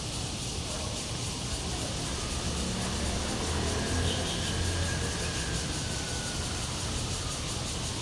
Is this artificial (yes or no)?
no